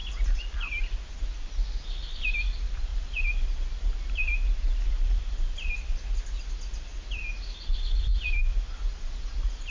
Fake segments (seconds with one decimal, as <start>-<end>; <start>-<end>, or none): none